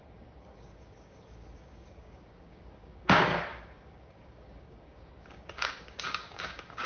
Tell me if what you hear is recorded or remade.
remade